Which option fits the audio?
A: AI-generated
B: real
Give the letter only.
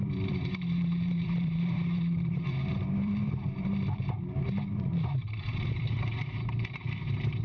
A